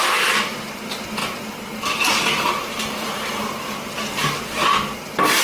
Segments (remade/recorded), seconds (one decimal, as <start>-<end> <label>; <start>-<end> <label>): 0.0-5.4 recorded